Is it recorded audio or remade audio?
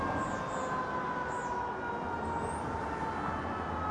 recorded